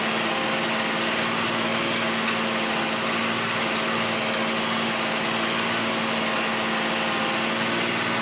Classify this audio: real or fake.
real